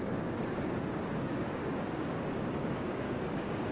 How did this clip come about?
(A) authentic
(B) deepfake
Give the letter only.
B